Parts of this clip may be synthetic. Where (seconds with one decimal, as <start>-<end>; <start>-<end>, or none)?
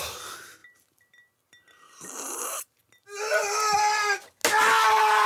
none